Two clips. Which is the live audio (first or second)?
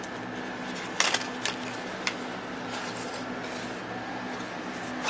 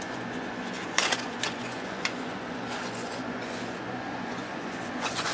first